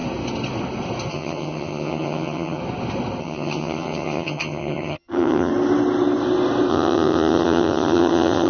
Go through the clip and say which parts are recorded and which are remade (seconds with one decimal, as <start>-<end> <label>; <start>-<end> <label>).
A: 0.0-1.1 recorded; 1.1-2.6 remade; 2.6-3.2 recorded; 3.2-5.5 remade; 5.5-6.7 recorded; 6.7-8.5 remade